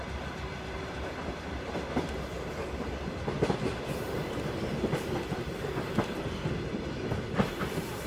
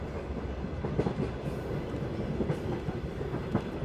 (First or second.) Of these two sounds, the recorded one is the second